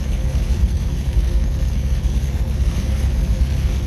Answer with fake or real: fake